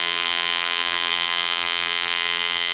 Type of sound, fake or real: fake